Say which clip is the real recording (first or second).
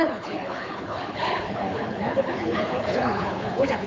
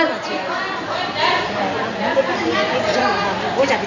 second